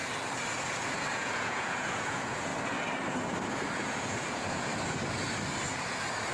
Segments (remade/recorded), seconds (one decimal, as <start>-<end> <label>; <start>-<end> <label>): 0.0-1.0 recorded; 1.0-2.5 remade; 2.5-3.5 recorded; 3.5-4.7 remade; 4.7-6.3 recorded